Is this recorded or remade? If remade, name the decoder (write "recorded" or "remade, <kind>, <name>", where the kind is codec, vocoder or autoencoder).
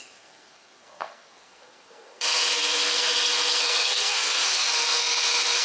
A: remade, codec, SNAC